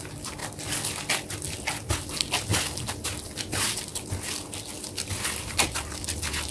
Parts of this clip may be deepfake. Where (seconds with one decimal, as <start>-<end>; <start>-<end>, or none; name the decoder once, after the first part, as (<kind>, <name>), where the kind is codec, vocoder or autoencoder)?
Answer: none